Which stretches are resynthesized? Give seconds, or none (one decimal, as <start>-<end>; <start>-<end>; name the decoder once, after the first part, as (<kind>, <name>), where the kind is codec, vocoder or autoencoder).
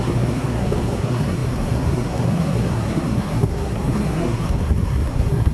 0.0-5.5 (codec, SNAC)